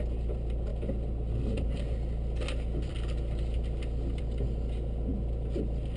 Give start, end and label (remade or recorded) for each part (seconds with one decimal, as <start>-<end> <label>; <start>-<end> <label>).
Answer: 0.0-6.0 recorded